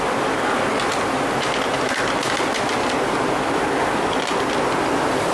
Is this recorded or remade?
recorded